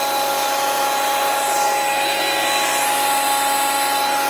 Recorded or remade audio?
recorded